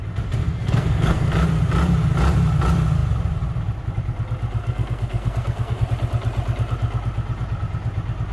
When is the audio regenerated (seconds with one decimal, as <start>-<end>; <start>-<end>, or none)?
0.4-1.3; 4.6-5.9